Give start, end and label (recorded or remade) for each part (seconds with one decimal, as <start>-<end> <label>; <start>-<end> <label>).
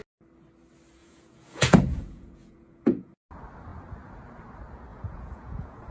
0.0-1.0 recorded; 1.0-3.3 remade; 3.3-4.9 recorded; 4.9-5.9 remade